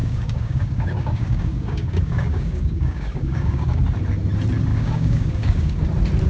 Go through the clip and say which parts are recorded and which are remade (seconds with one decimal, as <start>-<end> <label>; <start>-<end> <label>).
0.0-3.8 remade; 3.8-4.7 recorded; 4.7-5.8 remade; 5.8-6.3 recorded